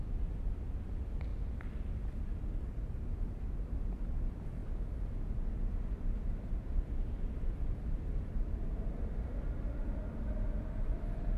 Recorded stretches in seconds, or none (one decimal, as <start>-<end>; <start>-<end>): 1.3-1.9